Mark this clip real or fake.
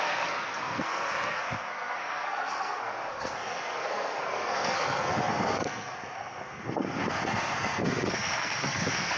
fake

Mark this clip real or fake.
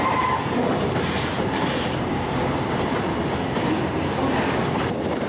fake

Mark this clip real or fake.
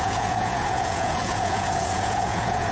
fake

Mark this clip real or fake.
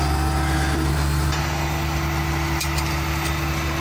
real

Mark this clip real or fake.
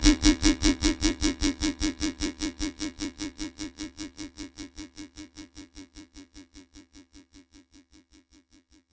fake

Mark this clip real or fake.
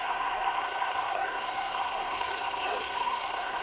fake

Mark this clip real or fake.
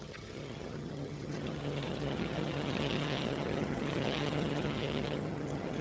fake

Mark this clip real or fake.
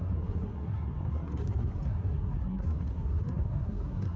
fake